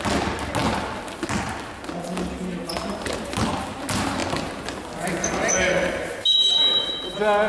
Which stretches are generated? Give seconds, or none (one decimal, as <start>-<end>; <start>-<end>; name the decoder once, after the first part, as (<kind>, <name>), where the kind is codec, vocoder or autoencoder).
none

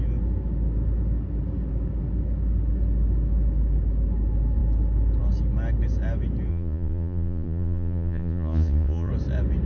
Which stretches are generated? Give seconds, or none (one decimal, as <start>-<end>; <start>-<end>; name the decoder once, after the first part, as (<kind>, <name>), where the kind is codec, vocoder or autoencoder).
6.5-9.1 (vocoder, Vocos)

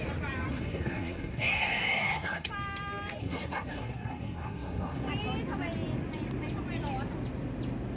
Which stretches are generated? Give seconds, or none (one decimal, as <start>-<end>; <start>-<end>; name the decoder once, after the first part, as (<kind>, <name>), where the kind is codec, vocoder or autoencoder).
0.5-2.5 (codec, SNAC); 3.2-5.1

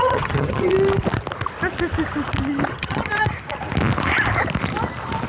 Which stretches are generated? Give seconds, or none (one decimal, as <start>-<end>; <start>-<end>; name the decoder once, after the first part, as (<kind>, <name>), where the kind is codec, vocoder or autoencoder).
0.0-0.7 (vocoder, HiFi-GAN); 2.7-3.1

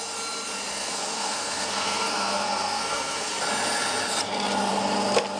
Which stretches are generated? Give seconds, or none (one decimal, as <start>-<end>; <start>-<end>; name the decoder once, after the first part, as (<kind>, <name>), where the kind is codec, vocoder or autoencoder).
0.7-3.3 (codec, SNAC)

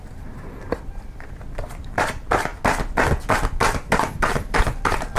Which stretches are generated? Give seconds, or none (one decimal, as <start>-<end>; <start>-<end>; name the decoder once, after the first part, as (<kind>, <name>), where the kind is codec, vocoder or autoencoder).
0.0-2.5 (vocoder, BigVGAN v2); 4.0-5.2